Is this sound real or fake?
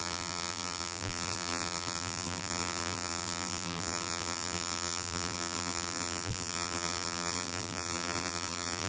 fake